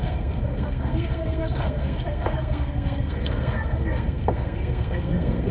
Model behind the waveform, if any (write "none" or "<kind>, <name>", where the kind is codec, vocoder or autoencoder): codec, SNAC